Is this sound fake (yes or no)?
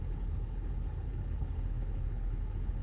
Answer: yes